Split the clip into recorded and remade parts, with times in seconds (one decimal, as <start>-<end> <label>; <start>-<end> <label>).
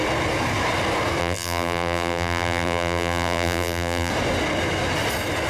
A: 0.0-1.2 recorded; 1.2-4.1 remade; 4.1-5.5 recorded